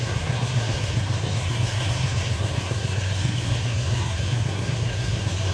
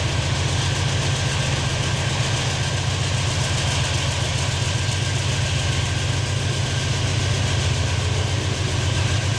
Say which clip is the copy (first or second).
first